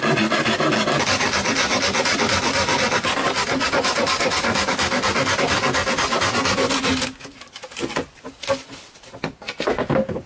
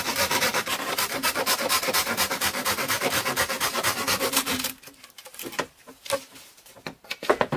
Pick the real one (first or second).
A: first